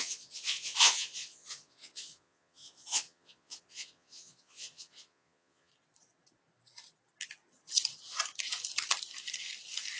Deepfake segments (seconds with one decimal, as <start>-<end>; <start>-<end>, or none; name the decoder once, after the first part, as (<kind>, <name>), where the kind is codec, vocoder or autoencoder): 0.0-5.7 (vocoder, Vocos)